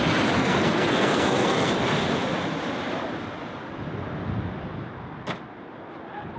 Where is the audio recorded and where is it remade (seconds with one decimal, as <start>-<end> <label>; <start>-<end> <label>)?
0.0-0.4 recorded; 0.4-1.7 remade; 1.7-6.4 recorded